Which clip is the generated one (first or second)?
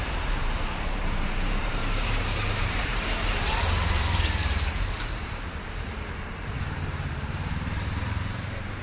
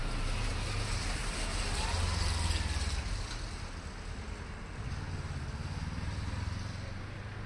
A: first